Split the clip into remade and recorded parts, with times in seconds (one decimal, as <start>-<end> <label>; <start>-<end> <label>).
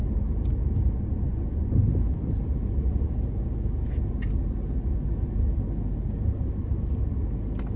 0.0-7.8 recorded